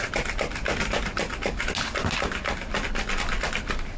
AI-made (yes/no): no